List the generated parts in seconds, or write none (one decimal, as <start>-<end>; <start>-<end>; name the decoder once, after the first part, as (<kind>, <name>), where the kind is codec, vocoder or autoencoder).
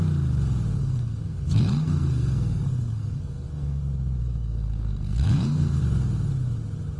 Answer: 0.8-3.8 (codec, SNAC); 4.2-5.8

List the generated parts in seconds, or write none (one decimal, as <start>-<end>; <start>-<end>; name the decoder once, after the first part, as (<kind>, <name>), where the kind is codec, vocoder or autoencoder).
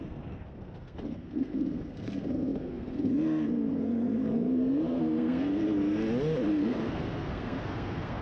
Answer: 0.0-6.0 (codec, SNAC); 6.5-8.2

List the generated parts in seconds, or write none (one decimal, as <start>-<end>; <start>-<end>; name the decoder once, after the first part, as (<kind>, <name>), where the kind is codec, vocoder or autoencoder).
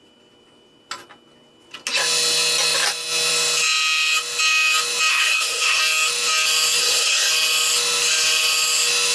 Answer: 5.1-5.8 (codec, SNAC); 6.8-7.3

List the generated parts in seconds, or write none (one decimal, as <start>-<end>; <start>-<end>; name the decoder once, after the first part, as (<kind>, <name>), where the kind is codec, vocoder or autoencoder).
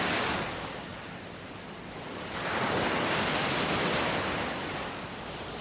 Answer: none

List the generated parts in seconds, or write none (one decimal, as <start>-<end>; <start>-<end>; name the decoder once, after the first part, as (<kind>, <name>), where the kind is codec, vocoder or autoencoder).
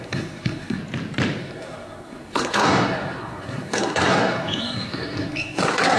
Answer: 0.0-0.8 (codec, SNAC); 1.4-6.0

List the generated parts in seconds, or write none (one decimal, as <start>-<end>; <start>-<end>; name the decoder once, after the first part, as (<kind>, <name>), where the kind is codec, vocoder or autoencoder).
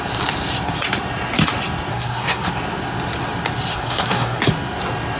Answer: 1.9-2.5 (codec, SNAC); 3.7-4.4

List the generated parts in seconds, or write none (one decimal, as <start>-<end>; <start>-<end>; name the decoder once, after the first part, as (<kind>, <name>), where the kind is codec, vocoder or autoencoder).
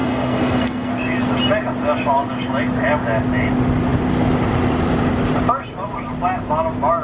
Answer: 0.0-0.9 (codec, SNAC)